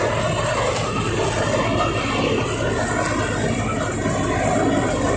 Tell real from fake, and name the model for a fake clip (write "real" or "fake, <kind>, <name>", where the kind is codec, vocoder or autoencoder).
real